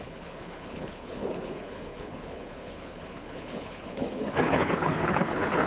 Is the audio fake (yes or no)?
yes